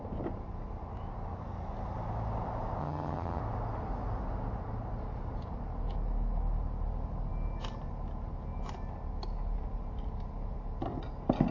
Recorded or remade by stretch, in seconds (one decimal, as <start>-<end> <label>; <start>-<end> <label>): 0.0-2.8 recorded; 2.8-3.4 remade; 3.4-11.5 recorded